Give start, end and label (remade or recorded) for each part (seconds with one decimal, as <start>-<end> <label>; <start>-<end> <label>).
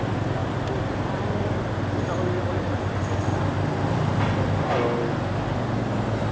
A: 0.0-6.3 recorded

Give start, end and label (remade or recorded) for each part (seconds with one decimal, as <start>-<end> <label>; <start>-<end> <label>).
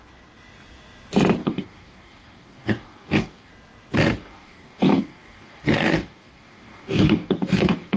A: 0.0-1.4 recorded; 1.4-3.5 remade; 3.5-4.2 recorded; 4.2-8.0 remade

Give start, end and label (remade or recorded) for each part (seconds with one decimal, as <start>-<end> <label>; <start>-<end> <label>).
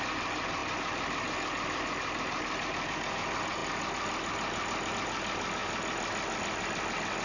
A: 0.0-7.2 recorded